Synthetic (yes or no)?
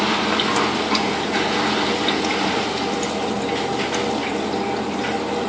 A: no